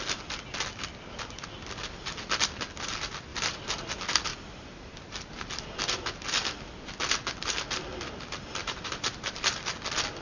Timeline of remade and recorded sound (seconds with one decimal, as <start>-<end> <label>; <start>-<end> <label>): 0.0-3.3 recorded; 3.3-3.9 remade; 3.9-4.3 recorded; 4.3-5.3 remade; 5.3-8.6 recorded; 8.6-9.6 remade; 9.6-10.2 recorded